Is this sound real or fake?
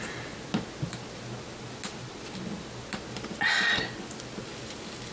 real